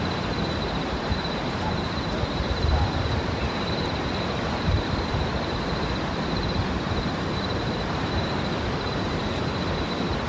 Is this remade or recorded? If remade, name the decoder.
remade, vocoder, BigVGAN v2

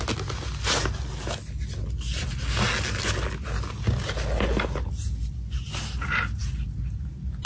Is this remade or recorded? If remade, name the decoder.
recorded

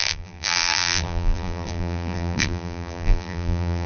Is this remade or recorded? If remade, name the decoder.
remade, vocoder, BigVGAN v2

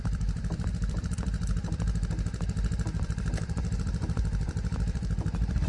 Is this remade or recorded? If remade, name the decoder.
remade, vocoder, BigVGAN v2